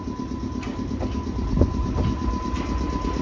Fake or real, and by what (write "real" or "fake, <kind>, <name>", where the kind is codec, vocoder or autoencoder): real